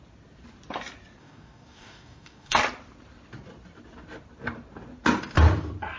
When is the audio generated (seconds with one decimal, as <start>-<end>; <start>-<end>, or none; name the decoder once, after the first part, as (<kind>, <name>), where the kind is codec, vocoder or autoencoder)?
1.2-2.6 (codec, DAC)